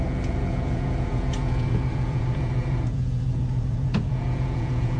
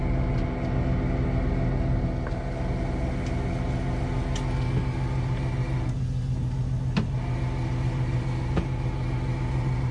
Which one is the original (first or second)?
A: second